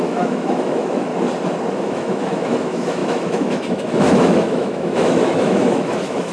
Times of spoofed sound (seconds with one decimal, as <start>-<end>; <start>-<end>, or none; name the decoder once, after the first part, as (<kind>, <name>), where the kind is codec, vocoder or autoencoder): 0.0-1.1 (autoencoder, DAC-VAE); 1.7-6.3